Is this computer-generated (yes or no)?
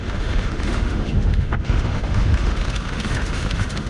yes